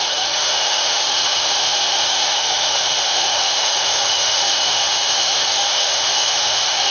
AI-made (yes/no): yes